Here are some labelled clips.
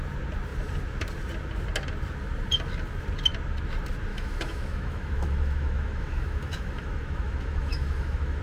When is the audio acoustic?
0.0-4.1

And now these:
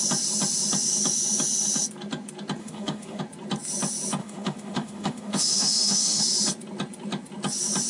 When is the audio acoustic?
0.0-2.6; 3.2-4.2; 6.2-7.9

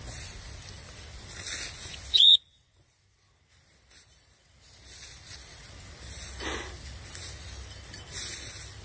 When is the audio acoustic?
0.0-1.8; 2.9-8.8

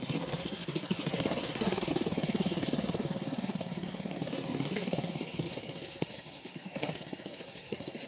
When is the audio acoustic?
none

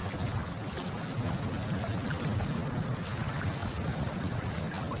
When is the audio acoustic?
0.0-3.6; 4.6-5.0

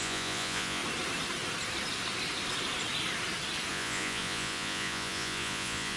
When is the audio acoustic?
0.8-3.7

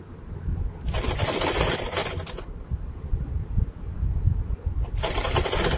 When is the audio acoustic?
0.0-5.8